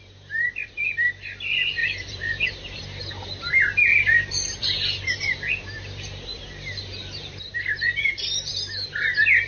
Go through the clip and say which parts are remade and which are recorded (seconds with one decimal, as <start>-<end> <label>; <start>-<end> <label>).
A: 0.0-1.8 recorded; 1.8-2.8 remade; 2.8-3.9 recorded; 3.9-8.5 remade; 8.5-9.5 recorded